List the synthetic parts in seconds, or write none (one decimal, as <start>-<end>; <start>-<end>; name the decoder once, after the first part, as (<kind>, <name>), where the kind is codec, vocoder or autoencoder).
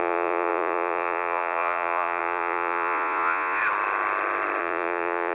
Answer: 0.0-3.6 (vocoder, Vocos); 4.6-5.3